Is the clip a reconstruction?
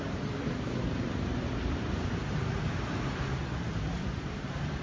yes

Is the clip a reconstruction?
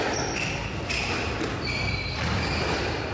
no